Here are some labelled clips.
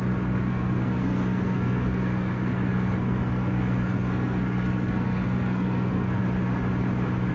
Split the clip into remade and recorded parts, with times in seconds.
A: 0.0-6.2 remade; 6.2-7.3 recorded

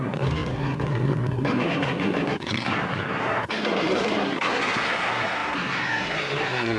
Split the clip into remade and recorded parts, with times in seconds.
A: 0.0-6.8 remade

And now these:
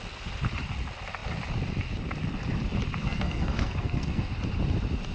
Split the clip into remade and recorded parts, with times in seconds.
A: 0.0-3.0 recorded; 3.0-4.3 remade; 4.3-5.1 recorded